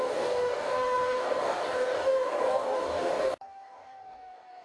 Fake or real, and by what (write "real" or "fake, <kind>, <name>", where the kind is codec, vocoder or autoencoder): fake, codec, DAC